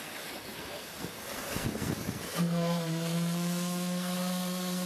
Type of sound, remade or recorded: remade